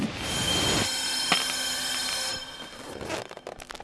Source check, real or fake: real